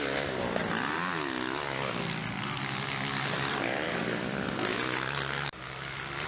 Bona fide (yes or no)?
yes